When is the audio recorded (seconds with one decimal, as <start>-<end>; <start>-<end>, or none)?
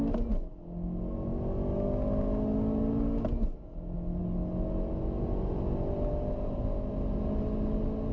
0.0-8.1